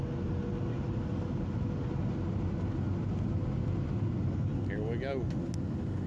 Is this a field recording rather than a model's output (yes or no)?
yes